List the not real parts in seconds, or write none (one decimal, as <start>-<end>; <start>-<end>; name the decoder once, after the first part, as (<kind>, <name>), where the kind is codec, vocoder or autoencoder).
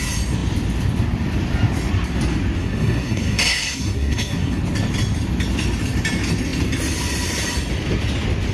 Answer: 2.6-4.6 (codec, SNAC)